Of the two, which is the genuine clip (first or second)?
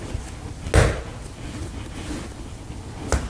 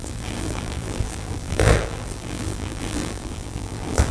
first